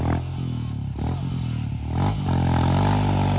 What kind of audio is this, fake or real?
real